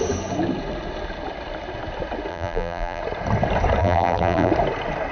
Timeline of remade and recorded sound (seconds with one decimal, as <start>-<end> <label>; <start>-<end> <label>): 0.0-2.3 recorded; 2.3-3.0 remade; 3.0-3.8 recorded; 3.8-4.5 remade; 4.5-5.1 recorded